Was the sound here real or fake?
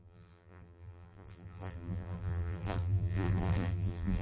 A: fake